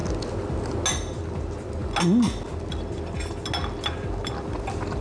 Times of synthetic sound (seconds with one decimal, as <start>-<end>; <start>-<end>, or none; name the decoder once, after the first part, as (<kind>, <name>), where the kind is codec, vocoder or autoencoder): none